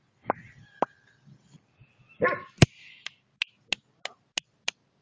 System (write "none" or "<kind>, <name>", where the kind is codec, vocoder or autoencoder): none